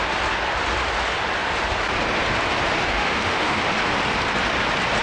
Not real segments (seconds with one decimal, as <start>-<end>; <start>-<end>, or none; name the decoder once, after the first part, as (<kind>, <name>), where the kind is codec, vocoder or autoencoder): 2.9-3.6 (autoencoder, DAC-VAE)